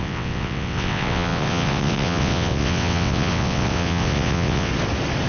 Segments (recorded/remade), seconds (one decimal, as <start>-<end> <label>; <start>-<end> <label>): 0.0-4.7 remade; 4.7-5.3 recorded